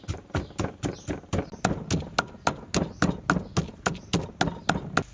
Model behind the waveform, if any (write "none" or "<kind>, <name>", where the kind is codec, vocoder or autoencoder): none